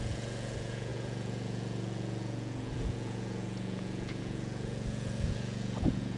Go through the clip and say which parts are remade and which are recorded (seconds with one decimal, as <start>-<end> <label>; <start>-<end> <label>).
0.0-6.2 remade

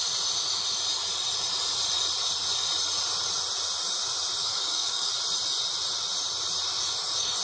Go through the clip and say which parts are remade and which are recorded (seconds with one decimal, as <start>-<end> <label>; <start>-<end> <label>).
0.0-4.4 recorded; 4.4-5.1 remade; 5.1-7.4 recorded

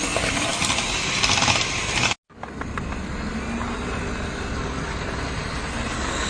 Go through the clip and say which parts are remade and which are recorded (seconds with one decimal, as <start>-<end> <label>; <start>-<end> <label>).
0.0-6.3 recorded

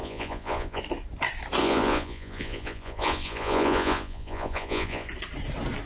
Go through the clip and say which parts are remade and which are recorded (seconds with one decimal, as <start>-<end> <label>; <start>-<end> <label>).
0.0-0.8 remade; 0.8-1.6 recorded; 1.6-5.1 remade; 5.1-5.9 recorded

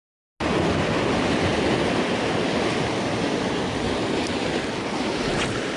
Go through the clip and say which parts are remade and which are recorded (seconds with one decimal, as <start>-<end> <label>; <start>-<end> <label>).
0.0-5.8 recorded